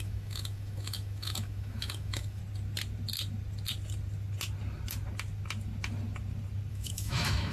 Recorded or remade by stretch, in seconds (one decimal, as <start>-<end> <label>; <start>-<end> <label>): 0.0-2.4 remade; 2.4-6.7 recorded; 6.7-7.5 remade